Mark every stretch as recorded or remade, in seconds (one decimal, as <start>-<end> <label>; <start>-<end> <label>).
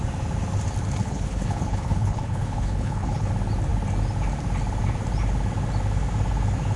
0.0-1.0 recorded; 1.0-3.3 remade; 3.3-6.8 recorded